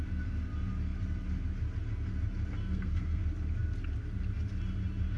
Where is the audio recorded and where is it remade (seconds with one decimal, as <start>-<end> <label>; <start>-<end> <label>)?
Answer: 0.0-2.6 recorded; 2.6-3.2 remade; 3.2-5.2 recorded